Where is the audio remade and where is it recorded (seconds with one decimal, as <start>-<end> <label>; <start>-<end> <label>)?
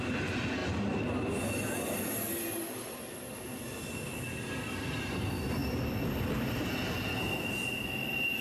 0.0-8.4 recorded